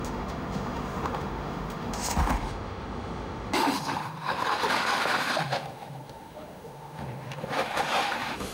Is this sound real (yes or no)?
no